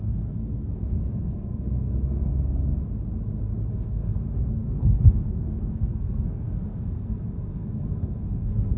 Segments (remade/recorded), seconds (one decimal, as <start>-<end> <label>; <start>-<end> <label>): 0.0-2.3 remade; 2.3-3.7 recorded; 3.7-8.8 remade